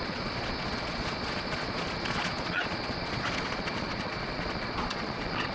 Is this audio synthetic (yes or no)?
yes